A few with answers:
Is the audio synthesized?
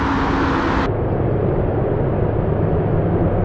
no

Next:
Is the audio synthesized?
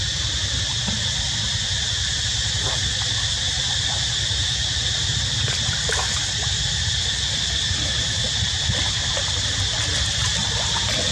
no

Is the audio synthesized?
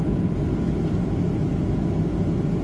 no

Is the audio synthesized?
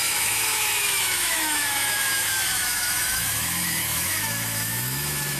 yes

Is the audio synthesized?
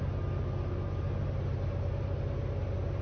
no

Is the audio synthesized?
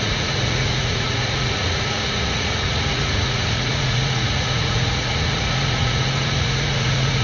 yes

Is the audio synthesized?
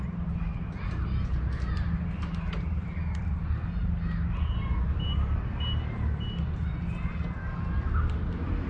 no